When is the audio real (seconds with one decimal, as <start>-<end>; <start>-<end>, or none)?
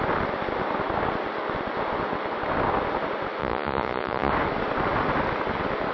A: 0.0-3.4; 4.3-5.9